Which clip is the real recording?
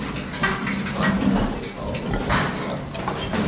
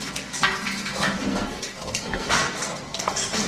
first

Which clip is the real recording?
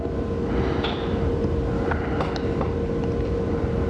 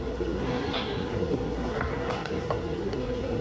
first